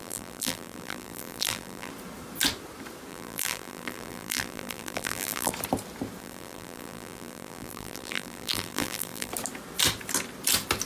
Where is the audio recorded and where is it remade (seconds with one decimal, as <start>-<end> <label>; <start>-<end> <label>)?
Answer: 0.0-1.9 remade; 1.9-3.1 recorded; 3.1-5.5 remade; 5.5-6.2 recorded; 6.2-9.3 remade; 9.3-10.9 recorded